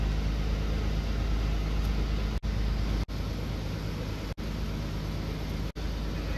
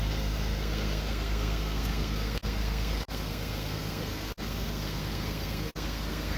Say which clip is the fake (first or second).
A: second